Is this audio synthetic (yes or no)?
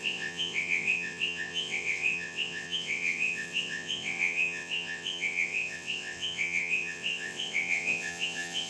yes